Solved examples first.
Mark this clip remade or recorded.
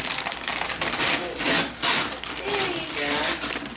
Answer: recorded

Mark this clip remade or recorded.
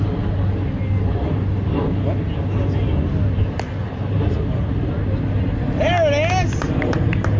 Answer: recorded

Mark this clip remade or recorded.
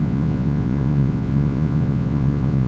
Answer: remade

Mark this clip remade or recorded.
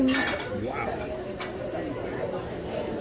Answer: recorded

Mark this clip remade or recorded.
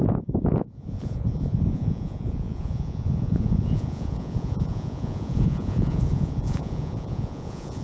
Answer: remade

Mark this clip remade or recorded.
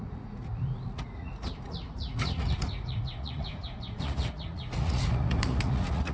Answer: remade